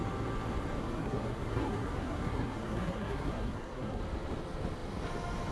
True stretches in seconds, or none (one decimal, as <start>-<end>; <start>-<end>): 0.0-0.8; 4.0-5.5